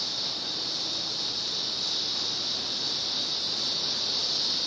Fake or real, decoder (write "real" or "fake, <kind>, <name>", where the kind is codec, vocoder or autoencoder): real